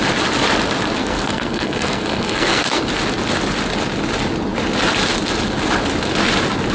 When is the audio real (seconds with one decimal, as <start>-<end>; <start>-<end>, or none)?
0.0-1.0; 2.8-6.7